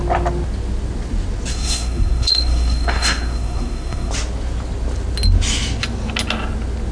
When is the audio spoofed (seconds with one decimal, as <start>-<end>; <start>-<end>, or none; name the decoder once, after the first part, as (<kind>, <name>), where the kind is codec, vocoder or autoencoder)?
1.5-4.1 (codec, SNAC)